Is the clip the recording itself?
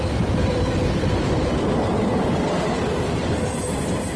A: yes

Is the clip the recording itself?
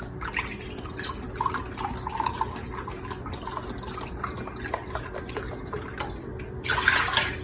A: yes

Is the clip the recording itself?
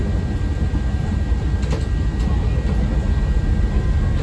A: yes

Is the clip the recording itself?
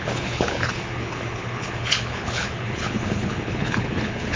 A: no